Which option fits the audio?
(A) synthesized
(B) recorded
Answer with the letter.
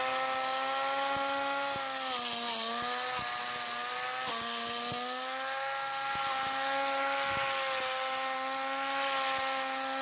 B